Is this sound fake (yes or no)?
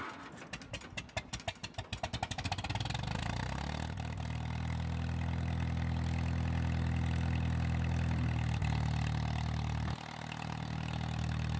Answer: no